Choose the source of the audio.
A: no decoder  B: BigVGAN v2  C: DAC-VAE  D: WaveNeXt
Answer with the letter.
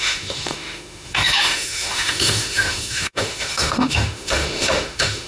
C